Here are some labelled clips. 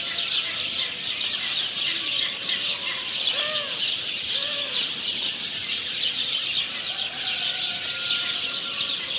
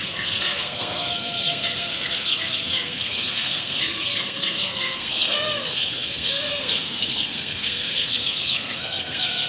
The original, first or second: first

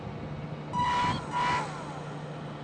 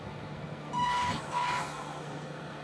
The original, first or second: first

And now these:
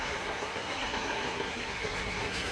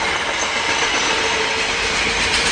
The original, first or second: second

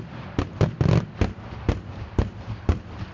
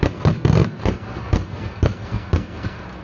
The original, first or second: first